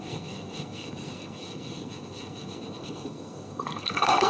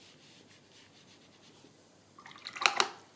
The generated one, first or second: first